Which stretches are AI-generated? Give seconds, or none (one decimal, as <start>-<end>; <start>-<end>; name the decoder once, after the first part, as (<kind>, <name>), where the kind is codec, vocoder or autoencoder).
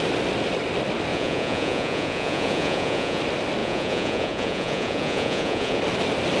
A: 1.1-3.2 (vocoder, Vocos); 3.6-5.8